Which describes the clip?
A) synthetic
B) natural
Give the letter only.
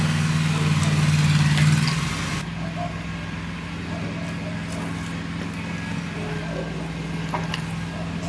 B